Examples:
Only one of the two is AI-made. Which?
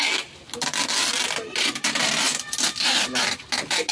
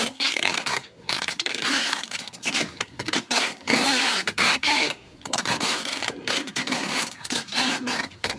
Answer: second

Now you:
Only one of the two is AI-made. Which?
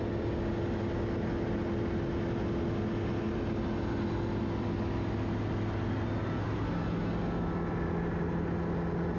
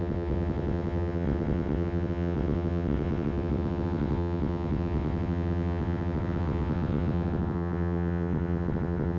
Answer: second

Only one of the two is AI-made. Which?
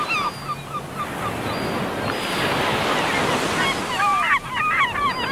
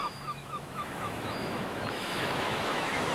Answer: second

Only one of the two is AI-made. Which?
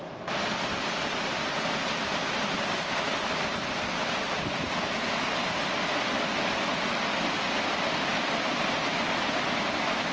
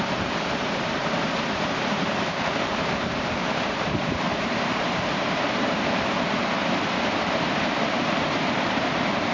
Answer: second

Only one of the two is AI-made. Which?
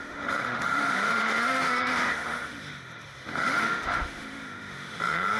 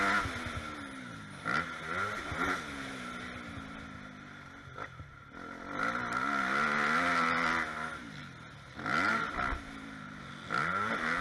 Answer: first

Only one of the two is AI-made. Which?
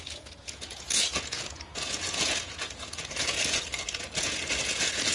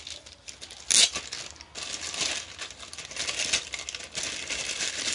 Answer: first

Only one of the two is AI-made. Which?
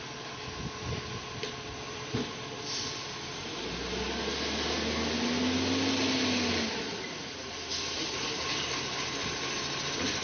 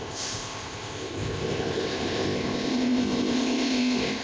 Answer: second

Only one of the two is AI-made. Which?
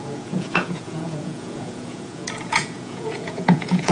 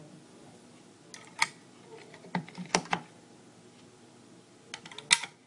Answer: first